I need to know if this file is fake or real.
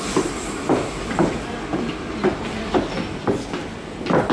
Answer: real